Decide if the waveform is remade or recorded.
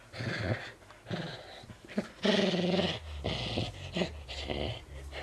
recorded